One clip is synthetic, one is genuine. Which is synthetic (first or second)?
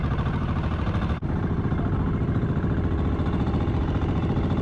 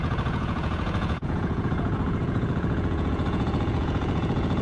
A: second